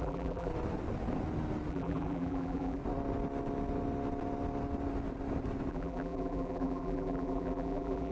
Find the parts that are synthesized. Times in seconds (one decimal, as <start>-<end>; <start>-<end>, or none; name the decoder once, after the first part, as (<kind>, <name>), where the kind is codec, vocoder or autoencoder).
0.0-0.5 (vocoder, BigVGAN v2); 1.7-2.8; 5.7-8.1

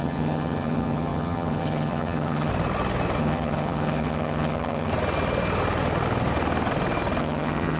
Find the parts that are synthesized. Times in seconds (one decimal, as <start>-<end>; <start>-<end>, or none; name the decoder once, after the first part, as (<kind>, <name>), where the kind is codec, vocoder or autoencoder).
0.0-2.5 (vocoder, HiFi-GAN); 3.2-4.9; 7.2-7.8

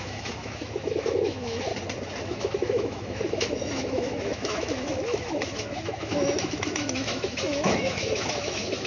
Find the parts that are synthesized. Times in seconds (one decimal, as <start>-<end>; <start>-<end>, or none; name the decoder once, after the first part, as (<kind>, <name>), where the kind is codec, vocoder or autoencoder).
0.0-1.7 (autoencoder, DAC-VAE); 2.2-8.9

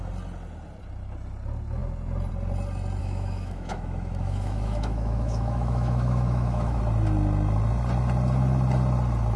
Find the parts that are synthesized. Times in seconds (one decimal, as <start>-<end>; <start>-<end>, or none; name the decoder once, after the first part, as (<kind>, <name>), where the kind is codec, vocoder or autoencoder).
3.0-6.8 (autoencoder, DAC-VAE)

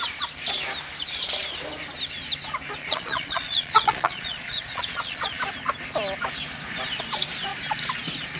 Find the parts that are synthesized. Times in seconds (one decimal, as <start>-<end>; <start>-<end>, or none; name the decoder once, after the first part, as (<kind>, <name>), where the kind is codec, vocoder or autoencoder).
2.8-5.4 (vocoder, Vocos)

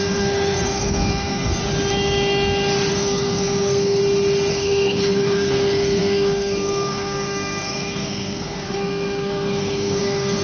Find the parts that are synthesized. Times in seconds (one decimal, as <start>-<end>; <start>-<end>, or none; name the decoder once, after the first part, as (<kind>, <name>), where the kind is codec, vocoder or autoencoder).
0.0-1.6 (codec, SNAC); 2.9-4.0; 4.5-10.4

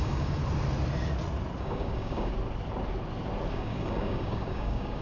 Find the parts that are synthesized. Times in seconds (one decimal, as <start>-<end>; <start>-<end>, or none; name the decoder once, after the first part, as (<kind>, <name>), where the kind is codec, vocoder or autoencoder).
0.0-0.4 (codec, DAC); 1.6-2.3; 3.5-5.0